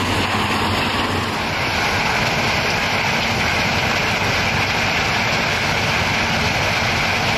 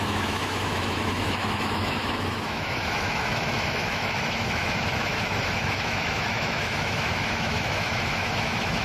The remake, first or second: second